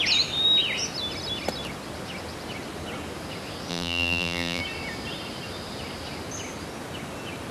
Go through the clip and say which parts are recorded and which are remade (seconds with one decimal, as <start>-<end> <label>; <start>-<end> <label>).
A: 0.0-3.7 recorded; 3.7-4.6 remade; 4.6-7.5 recorded